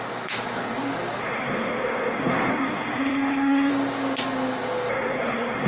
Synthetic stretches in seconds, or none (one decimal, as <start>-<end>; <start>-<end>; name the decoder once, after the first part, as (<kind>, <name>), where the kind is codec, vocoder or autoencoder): 1.2-3.7 (codec, SNAC); 4.9-5.7